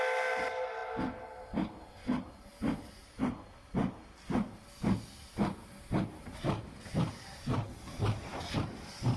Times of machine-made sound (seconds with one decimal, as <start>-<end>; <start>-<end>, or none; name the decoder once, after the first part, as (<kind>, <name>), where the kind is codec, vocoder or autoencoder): none